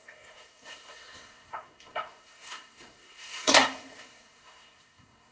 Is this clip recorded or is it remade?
remade